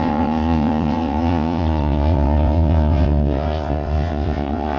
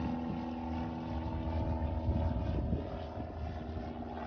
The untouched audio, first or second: second